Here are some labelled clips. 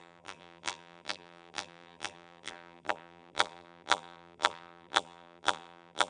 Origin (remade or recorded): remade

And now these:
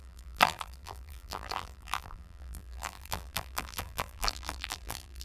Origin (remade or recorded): remade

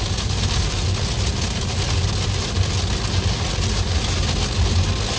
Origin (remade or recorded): recorded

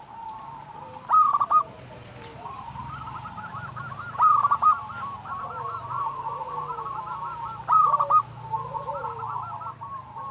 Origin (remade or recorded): remade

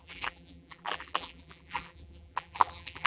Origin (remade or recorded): remade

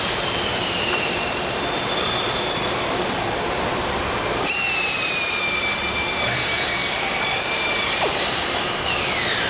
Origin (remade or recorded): remade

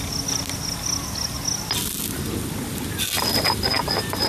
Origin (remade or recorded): recorded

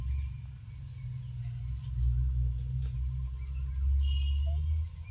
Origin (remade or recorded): recorded